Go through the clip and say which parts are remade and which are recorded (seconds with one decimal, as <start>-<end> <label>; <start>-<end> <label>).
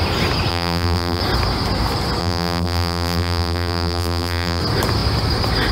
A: 0.0-0.5 recorded; 0.5-1.2 remade; 1.2-2.2 recorded; 2.2-4.6 remade; 4.6-5.7 recorded